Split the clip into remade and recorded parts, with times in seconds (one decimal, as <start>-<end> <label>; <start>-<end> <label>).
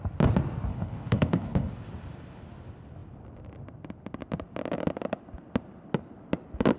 0.0-0.7 recorded; 0.7-1.7 remade; 1.7-6.8 recorded